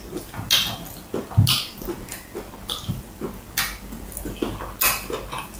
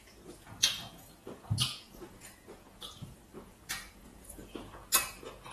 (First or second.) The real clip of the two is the first